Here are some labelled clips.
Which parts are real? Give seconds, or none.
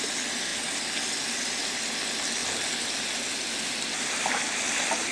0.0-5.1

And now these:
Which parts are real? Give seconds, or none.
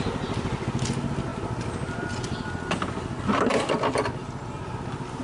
0.0-5.2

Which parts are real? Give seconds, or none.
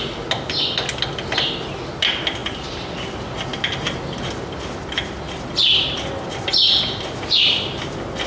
0.0-8.3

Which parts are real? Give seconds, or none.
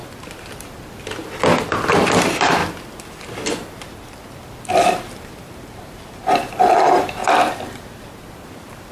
0.0-1.9; 2.6-5.3; 7.2-8.5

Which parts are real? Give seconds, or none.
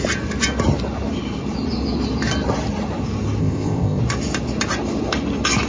0.0-3.4; 4.0-5.7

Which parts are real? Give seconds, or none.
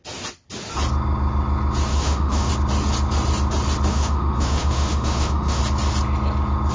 0.0-1.9; 2.5-3.9; 5.6-6.7